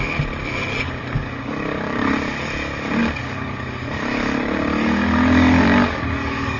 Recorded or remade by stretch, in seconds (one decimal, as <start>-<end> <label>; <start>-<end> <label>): 0.0-0.7 recorded; 0.7-2.1 remade; 2.1-3.0 recorded; 3.0-6.6 remade